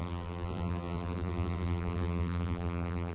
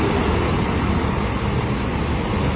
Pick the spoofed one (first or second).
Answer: first